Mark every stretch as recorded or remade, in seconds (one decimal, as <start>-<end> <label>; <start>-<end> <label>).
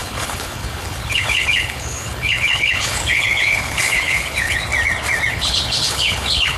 0.0-4.7 remade; 4.7-5.3 recorded; 5.3-6.6 remade